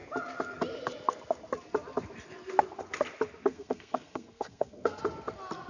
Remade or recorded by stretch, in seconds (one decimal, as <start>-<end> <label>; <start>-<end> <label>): 0.0-3.5 recorded; 3.5-5.0 remade; 5.0-5.7 recorded